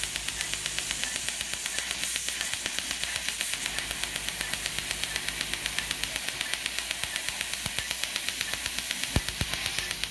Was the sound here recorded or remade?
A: recorded